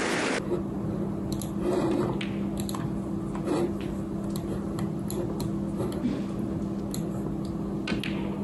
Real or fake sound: real